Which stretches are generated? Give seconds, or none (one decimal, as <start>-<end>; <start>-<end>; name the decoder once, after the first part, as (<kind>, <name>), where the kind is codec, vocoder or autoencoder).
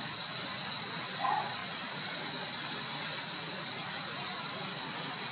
0.0-5.3 (vocoder, Vocos)